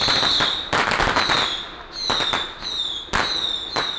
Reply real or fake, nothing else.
real